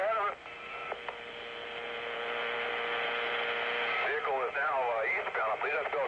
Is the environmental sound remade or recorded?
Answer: recorded